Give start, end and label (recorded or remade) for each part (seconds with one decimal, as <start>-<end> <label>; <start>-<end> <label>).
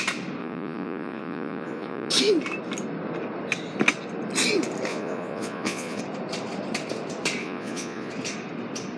0.0-0.4 recorded; 0.4-2.1 remade; 2.1-4.9 recorded; 4.9-6.0 remade; 6.0-7.4 recorded; 7.4-8.1 remade; 8.1-9.0 recorded